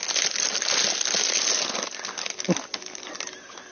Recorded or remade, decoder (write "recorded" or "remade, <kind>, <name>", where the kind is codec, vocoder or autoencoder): recorded